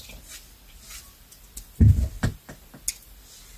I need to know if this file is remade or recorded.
recorded